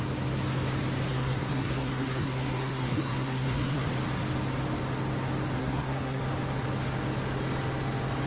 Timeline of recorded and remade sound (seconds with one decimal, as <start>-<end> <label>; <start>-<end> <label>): 0.0-1.1 recorded; 1.1-3.9 remade; 3.9-5.6 recorded; 5.6-6.2 remade; 6.2-8.3 recorded

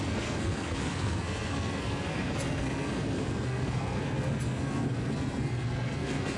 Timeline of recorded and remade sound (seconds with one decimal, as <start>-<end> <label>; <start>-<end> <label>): 0.0-6.4 remade

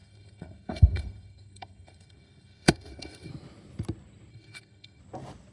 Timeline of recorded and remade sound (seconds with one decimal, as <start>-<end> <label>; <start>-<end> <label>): 0.0-3.3 remade; 3.3-4.3 recorded; 4.3-5.0 remade; 5.0-5.5 recorded

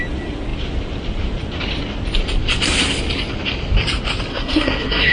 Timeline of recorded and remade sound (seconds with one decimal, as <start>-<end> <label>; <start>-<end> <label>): 0.0-4.3 recorded; 4.3-5.1 remade

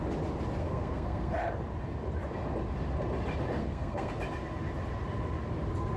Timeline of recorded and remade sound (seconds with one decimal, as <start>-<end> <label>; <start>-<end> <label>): 0.0-0.6 recorded; 0.6-1.3 remade; 1.3-3.6 recorded; 3.6-4.1 remade; 4.1-6.0 recorded

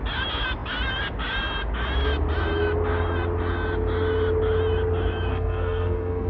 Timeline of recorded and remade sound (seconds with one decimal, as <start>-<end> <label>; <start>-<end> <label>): 0.0-5.3 recorded; 5.3-6.3 remade

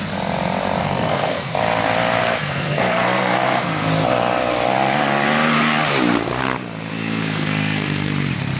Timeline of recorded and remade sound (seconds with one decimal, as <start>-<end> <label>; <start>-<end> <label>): 0.0-0.8 recorded; 0.8-1.5 remade; 1.5-2.2 recorded; 2.2-3.9 remade; 3.9-6.9 recorded; 6.9-8.1 remade; 8.1-8.6 recorded